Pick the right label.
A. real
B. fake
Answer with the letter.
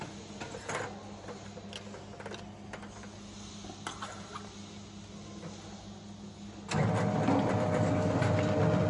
A